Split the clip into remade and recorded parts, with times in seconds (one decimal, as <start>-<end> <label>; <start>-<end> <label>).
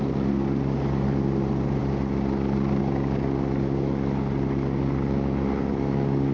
0.0-6.3 recorded